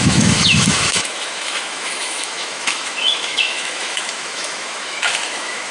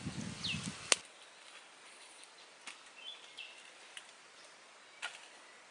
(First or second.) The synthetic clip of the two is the first